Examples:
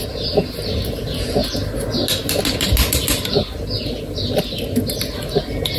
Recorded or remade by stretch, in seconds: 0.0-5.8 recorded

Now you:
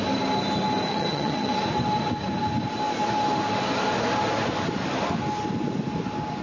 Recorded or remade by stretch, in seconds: 0.0-0.9 recorded; 0.9-1.5 remade; 1.5-6.4 recorded

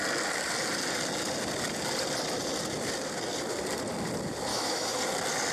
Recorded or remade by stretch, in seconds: 0.0-4.5 recorded; 4.5-5.0 remade; 5.0-5.5 recorded

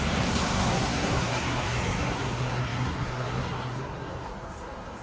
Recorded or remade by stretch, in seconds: 0.0-5.0 remade

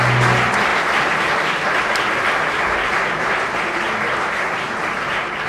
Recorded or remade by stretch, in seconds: 0.0-0.7 recorded; 0.7-1.8 remade; 1.8-5.5 recorded